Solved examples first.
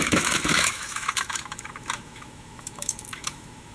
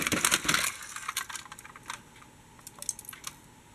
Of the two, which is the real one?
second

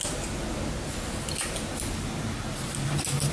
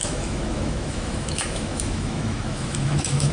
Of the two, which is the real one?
first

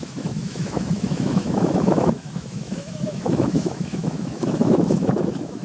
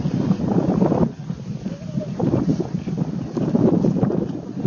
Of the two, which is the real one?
second